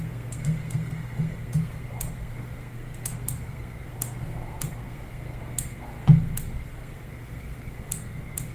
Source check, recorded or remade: remade